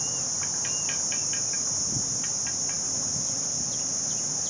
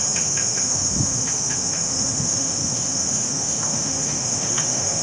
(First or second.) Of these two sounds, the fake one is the second